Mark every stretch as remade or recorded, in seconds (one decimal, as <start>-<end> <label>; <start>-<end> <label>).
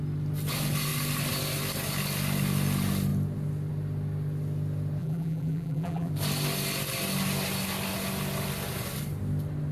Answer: 0.0-5.0 recorded; 5.0-6.1 remade; 6.1-9.7 recorded